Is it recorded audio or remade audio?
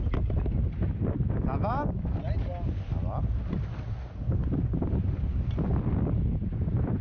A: recorded